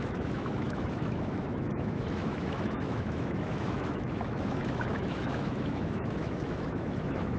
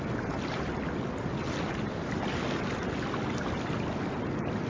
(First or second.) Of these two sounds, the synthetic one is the first